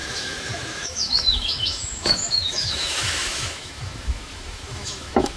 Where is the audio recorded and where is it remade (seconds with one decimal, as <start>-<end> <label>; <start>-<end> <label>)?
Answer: 0.0-5.4 remade